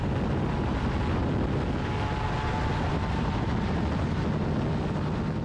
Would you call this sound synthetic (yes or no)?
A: no